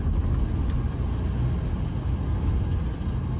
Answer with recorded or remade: recorded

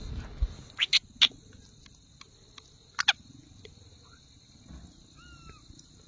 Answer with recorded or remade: recorded